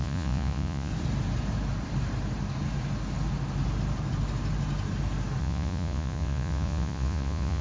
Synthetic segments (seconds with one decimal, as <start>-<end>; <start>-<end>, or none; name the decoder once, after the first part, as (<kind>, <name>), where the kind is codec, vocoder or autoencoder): 0.0-0.9 (vocoder, Vocos); 5.4-7.6